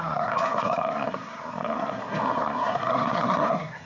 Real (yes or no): no